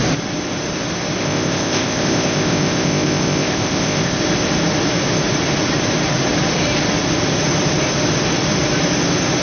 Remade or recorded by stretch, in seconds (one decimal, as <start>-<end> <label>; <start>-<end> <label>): 0.0-1.2 recorded; 1.2-4.2 remade; 4.2-9.4 recorded